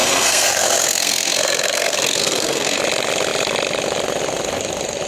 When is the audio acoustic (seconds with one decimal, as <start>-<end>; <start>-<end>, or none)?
2.8-5.1